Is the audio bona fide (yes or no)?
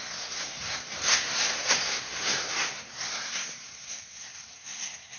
no